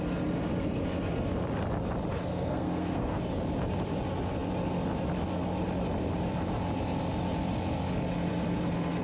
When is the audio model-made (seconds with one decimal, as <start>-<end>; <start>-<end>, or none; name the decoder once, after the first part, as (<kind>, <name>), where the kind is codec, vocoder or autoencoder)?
2.3-3.2 (codec, SNAC)